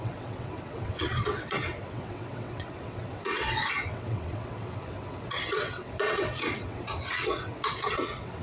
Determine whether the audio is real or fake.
fake